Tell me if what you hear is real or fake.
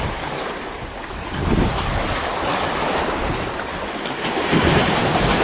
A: real